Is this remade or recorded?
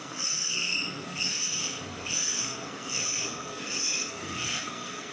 remade